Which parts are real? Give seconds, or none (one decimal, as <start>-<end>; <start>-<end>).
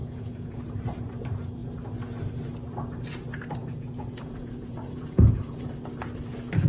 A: 0.6-3.6; 5.7-6.7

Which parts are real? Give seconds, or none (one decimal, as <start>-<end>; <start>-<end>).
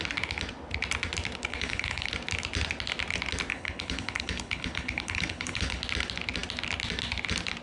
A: 0.0-1.5; 2.1-3.5; 5.8-7.6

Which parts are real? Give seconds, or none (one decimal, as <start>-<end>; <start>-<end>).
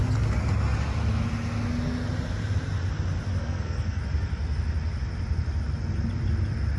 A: 0.0-3.4; 4.0-6.8